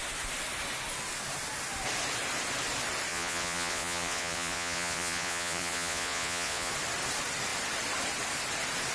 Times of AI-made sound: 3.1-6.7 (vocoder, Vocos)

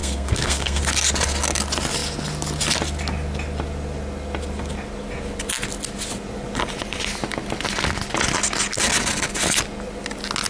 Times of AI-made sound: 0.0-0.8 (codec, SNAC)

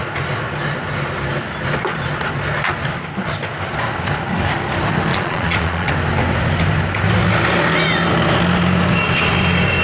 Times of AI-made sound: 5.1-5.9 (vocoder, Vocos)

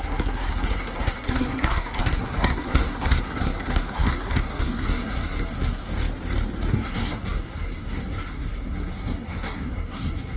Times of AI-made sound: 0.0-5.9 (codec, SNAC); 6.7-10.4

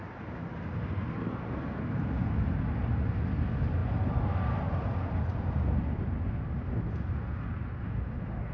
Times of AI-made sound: none

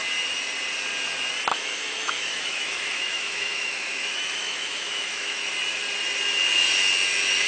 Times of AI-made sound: 1.5-5.5 (autoencoder, DAC-VAE)

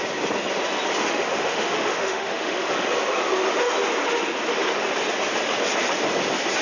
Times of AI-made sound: 1.0-2.7 (autoencoder, DAC-VAE)

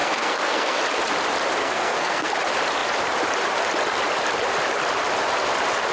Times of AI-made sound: 0.0-0.8 (codec, SNAC); 1.6-2.3